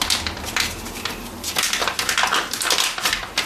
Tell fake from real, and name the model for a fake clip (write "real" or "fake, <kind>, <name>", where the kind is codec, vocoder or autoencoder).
real